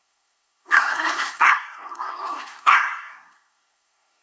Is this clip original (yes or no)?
no